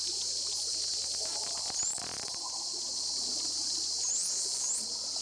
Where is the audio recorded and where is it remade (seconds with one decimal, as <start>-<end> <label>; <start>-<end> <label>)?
0.0-1.9 recorded; 1.9-3.0 remade; 3.0-5.2 recorded

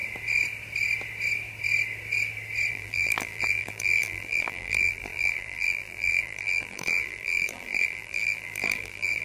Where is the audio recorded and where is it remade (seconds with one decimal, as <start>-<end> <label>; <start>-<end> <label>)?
0.0-2.7 recorded; 2.7-9.2 remade